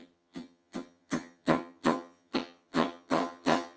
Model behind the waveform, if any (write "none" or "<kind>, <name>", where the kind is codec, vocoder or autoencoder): vocoder, HiFi-GAN